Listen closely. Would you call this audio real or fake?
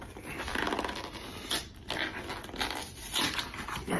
real